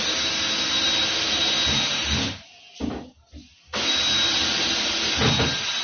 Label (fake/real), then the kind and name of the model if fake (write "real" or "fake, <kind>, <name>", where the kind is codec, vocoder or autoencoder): real